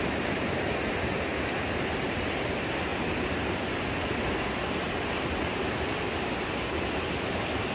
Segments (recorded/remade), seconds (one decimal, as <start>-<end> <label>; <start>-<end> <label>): 0.0-7.7 recorded